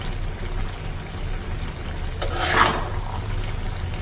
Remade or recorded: recorded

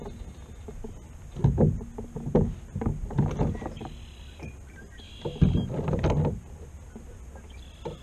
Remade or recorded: recorded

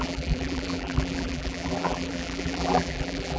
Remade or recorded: remade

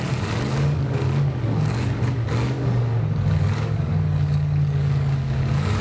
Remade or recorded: remade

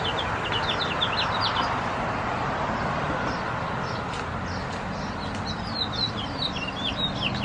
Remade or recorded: recorded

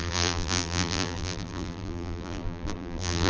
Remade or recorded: remade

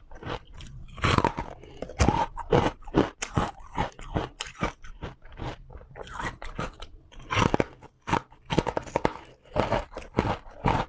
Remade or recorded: recorded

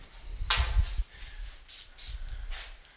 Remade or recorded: recorded